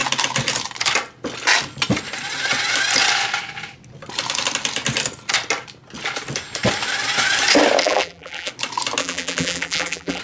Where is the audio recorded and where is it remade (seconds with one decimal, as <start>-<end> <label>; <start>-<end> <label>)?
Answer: 0.0-7.8 recorded; 7.8-8.5 remade; 8.5-9.0 recorded; 9.0-10.2 remade